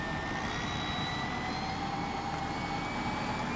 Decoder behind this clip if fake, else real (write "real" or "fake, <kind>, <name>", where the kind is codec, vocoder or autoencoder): real